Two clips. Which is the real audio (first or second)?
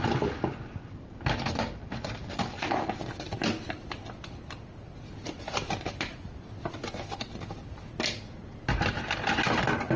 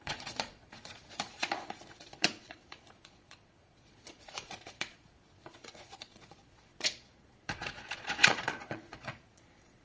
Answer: first